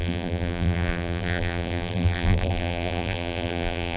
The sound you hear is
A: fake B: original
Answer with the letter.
A